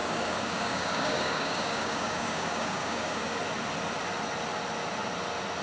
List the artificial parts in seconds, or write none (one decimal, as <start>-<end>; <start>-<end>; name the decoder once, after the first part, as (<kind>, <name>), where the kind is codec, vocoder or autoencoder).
0.0-3.4 (codec, DAC)